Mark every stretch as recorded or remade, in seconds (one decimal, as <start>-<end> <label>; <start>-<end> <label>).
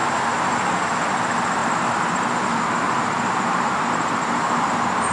0.0-0.7 remade; 0.7-1.6 recorded; 1.6-5.1 remade